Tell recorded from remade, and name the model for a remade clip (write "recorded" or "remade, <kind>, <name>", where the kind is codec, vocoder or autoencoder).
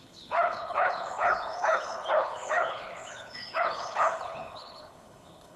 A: remade, codec, HILCodec